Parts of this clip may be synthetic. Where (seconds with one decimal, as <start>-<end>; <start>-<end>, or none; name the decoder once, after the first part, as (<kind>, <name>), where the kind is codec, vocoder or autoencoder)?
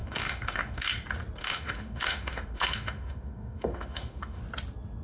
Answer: 0.0-0.9 (autoencoder, DAC-VAE); 1.4-4.4